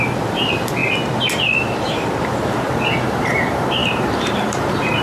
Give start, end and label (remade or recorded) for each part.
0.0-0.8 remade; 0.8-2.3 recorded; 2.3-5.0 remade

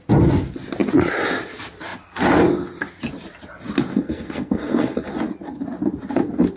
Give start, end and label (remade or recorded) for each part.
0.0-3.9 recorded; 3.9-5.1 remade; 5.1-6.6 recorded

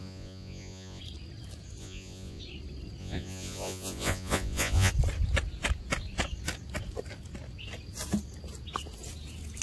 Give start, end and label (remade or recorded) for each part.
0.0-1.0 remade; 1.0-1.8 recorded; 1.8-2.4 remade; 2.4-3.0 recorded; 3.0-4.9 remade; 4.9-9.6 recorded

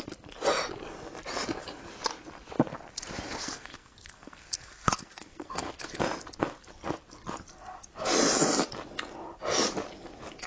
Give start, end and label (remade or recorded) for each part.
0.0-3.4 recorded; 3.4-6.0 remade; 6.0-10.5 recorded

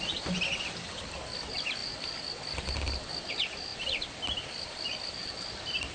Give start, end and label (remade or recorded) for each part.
0.0-1.8 recorded; 1.8-3.3 remade; 3.3-3.7 recorded; 3.7-5.3 remade; 5.3-5.9 recorded